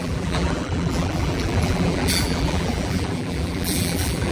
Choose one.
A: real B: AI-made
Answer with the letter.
B